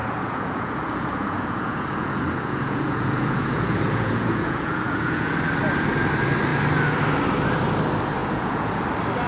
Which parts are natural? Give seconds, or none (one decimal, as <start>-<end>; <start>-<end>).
5.3-8.2; 8.8-9.3